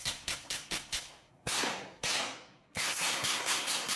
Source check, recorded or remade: remade